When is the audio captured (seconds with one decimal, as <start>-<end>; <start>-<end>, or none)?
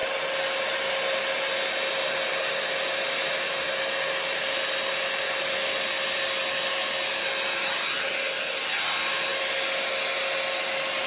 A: 0.0-11.1